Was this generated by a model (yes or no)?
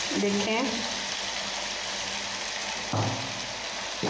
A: no